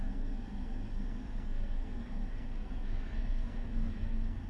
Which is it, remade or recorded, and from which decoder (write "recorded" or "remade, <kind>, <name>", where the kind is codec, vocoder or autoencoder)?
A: remade, codec, SNAC